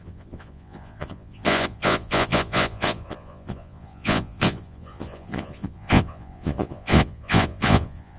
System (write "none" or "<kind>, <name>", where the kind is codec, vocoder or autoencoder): vocoder, Vocos